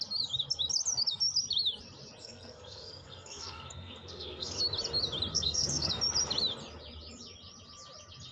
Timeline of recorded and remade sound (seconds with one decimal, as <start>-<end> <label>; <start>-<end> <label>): 0.0-2.2 recorded; 2.2-4.6 remade; 4.6-5.3 recorded; 5.3-5.9 remade; 5.9-8.3 recorded